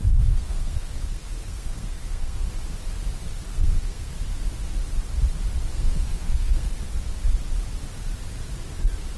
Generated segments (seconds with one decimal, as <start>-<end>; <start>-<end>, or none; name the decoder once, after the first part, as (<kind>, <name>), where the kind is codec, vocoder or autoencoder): 0.0-2.5 (codec, SNAC); 3.5-4.1; 5.7-6.7

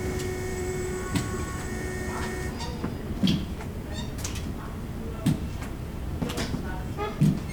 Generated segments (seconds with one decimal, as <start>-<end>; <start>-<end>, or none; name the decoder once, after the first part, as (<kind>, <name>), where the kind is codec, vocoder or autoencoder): 0.5-1.7 (vocoder, BigVGAN v2)

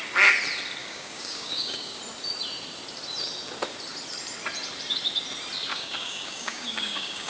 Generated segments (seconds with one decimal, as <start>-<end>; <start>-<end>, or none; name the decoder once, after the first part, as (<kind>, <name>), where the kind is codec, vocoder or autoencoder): 0.8-2.0 (codec, DAC); 5.7-7.3

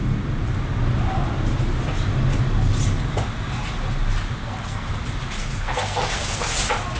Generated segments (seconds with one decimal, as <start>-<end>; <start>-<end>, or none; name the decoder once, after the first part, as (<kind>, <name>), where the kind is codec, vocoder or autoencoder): 4.4-4.9 (codec, SNAC); 5.4-6.5

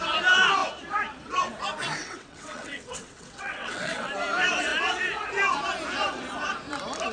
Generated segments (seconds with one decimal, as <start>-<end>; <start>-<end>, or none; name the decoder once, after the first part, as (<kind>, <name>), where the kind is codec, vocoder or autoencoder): 2.0-4.1 (vocoder, WaveNeXt)